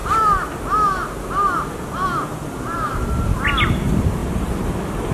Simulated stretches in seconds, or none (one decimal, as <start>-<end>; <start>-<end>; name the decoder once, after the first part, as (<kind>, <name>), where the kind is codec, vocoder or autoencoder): 4.2-5.1 (vocoder, BigVGAN v2)